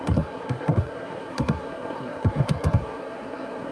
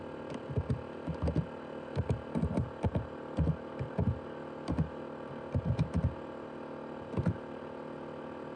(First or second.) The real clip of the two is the second